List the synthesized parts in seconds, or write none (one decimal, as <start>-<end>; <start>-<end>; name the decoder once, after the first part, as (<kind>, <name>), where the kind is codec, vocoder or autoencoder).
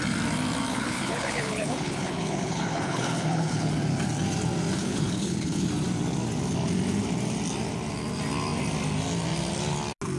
0.7-3.7 (codec, HILCodec); 4.8-5.7